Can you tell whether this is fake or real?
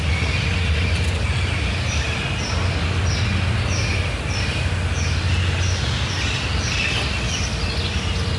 real